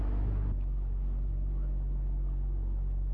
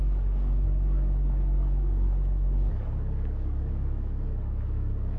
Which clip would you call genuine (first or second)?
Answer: first